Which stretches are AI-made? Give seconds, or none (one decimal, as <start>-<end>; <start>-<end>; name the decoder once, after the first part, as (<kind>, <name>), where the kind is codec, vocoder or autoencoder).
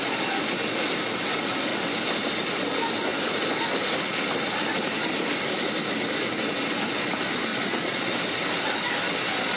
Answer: 7.5-8.2 (vocoder, Vocos)